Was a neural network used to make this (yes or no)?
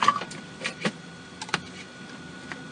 no